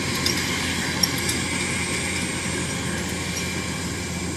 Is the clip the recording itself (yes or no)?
yes